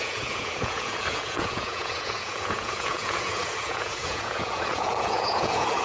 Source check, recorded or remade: remade